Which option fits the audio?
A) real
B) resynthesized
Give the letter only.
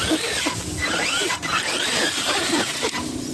B